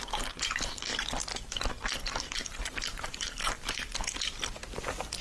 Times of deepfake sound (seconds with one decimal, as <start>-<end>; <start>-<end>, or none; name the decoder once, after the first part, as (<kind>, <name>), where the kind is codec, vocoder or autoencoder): 0.0-0.9 (vocoder, BigVGAN v2); 2.6-3.9